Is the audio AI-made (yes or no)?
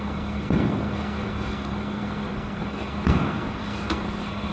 yes